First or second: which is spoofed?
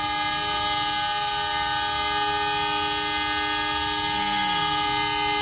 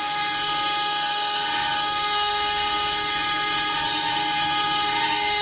second